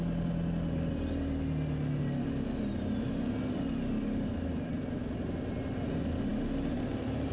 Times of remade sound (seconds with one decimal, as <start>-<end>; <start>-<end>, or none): none